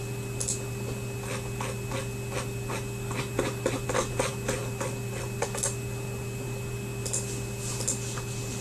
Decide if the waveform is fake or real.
real